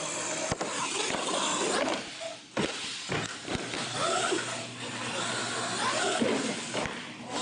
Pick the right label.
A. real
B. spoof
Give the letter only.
A